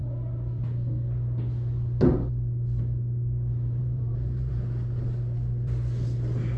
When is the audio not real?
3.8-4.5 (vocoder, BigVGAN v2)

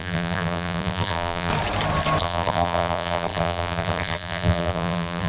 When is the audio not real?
0.0-1.5 (vocoder, BigVGAN v2); 2.2-5.3

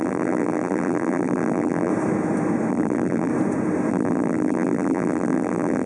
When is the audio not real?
0.0-1.9 (vocoder, BigVGAN v2); 2.7-3.3; 3.9-5.9

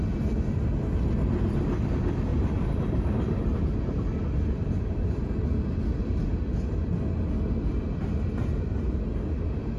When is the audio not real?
2.3-3.6 (vocoder, BigVGAN v2)

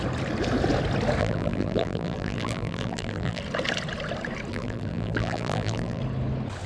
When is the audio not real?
1.2-3.4 (vocoder, BigVGAN v2); 4.5-6.0

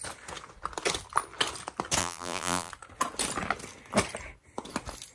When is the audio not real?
2.0-2.7 (vocoder, BigVGAN v2)

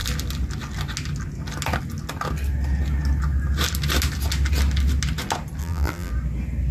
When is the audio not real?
5.6-6.1 (vocoder, BigVGAN v2)